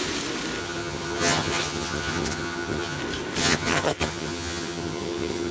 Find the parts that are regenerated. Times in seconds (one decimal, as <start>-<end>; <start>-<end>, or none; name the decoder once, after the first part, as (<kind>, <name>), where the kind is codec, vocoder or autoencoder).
0.6-3.0 (vocoder, HiFi-GAN); 3.4-5.5